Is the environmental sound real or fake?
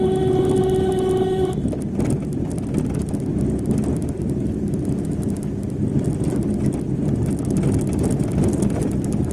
real